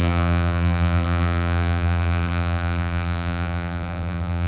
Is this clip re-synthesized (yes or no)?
yes